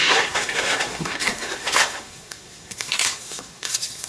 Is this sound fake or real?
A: fake